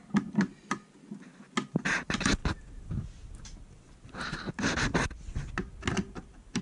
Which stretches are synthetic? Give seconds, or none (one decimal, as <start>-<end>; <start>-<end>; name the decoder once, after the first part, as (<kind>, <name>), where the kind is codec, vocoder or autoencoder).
none